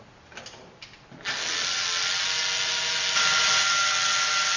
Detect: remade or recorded recorded